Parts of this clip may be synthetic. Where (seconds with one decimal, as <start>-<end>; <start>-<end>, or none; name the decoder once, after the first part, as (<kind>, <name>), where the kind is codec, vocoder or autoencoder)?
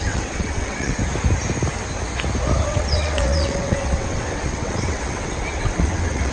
0.0-1.0 (vocoder, WaveNeXt); 2.6-6.3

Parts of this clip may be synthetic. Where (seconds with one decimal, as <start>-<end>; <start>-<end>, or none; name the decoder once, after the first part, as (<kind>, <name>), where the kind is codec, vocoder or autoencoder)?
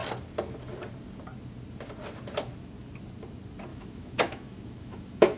3.7-5.4 (autoencoder, DAC-VAE)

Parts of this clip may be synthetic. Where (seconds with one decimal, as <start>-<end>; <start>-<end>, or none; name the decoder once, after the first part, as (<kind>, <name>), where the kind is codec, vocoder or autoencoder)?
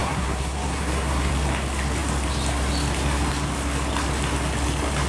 0.0-1.3 (codec, SNAC)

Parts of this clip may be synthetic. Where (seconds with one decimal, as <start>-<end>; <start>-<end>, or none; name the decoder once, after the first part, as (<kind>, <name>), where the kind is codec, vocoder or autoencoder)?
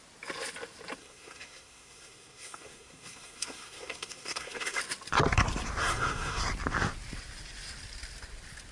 1.0-4.8 (codec, SNAC); 5.8-6.4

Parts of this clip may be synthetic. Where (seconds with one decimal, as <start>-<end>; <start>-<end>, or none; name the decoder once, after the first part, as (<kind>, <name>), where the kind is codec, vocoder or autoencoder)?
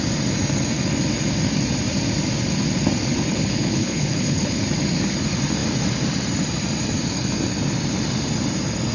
3.3-4.6 (codec, HILCodec)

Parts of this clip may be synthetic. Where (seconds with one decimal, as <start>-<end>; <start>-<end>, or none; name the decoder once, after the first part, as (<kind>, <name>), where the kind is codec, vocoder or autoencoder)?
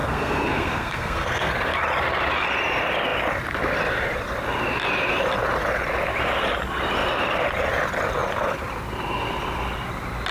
0.0-1.5 (codec, SNAC)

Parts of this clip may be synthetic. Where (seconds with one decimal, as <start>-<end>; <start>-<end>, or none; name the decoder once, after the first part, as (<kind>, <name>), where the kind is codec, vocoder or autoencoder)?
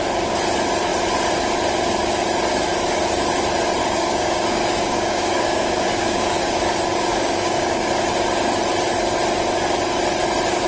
3.8-6.6 (codec, DAC); 7.1-7.9